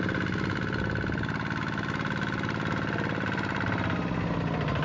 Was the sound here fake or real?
real